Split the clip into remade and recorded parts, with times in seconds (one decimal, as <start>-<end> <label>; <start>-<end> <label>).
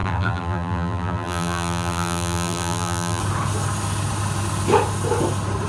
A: 0.0-3.2 remade; 3.2-5.7 recorded